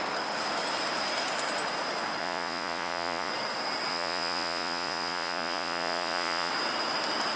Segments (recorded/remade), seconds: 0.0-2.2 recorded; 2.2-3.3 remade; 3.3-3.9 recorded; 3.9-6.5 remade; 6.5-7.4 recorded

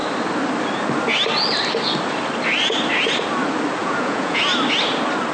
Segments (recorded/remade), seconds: 0.0-3.8 recorded; 3.8-4.4 remade; 4.4-5.3 recorded

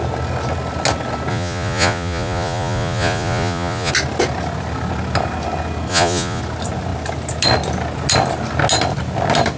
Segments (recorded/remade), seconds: 0.0-1.3 recorded; 1.3-3.9 remade; 3.9-5.9 recorded; 5.9-6.4 remade; 6.4-9.6 recorded